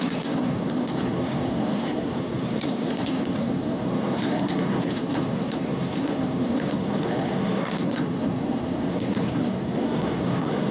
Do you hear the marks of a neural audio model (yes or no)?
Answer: yes